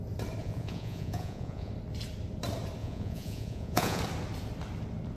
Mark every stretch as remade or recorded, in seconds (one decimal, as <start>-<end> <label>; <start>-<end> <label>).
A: 0.0-0.4 recorded; 0.4-1.7 remade; 1.7-2.8 recorded; 2.8-4.0 remade; 4.0-5.2 recorded

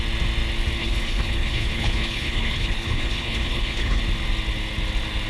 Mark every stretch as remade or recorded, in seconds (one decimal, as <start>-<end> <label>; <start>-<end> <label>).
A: 0.0-0.8 recorded; 0.8-4.0 remade; 4.0-5.3 recorded

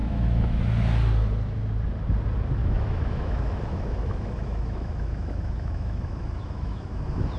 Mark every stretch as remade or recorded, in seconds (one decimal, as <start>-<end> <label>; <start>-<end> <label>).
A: 0.0-0.6 remade; 0.6-2.6 recorded; 2.6-7.0 remade; 7.0-7.4 recorded

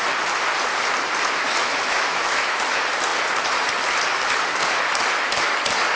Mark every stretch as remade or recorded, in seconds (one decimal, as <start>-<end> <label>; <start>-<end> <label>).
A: 0.0-1.6 recorded; 1.6-2.6 remade; 2.6-6.0 recorded

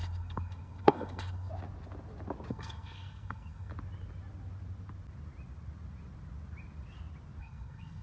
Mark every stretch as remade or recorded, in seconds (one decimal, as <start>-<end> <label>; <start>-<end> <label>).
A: 0.0-1.5 remade; 1.5-2.5 recorded; 2.5-3.7 remade; 3.7-7.4 recorded; 7.4-8.0 remade

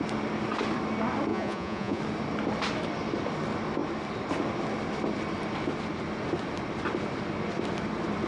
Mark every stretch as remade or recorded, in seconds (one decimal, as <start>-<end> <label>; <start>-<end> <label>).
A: 0.0-1.3 recorded; 1.3-2.0 remade; 2.0-8.3 recorded